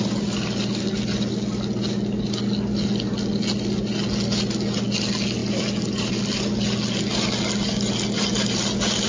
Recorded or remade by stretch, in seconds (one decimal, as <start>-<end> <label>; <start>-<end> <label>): 0.0-5.4 recorded; 5.4-6.1 remade; 6.1-9.1 recorded